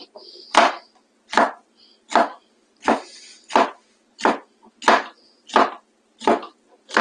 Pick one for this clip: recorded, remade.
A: recorded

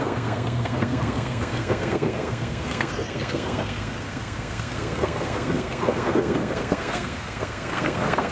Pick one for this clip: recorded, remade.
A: remade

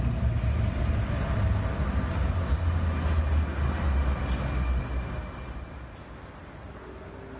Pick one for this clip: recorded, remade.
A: recorded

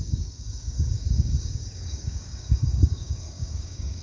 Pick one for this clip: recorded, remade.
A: remade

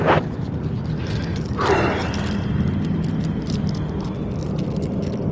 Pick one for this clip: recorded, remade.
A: recorded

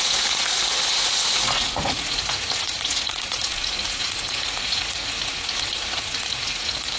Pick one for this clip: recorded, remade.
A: remade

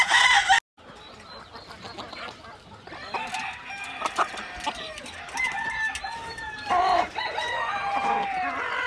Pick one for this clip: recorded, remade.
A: recorded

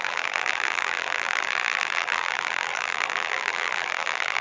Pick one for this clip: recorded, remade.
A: remade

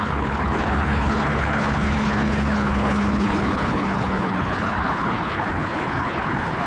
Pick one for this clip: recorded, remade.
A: remade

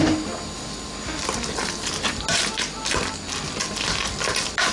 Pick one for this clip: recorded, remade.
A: recorded